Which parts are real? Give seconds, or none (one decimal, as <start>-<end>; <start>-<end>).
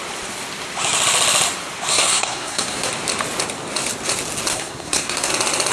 0.0-1.9; 2.9-4.5; 5.3-5.7